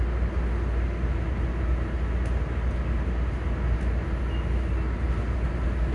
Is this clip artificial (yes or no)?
no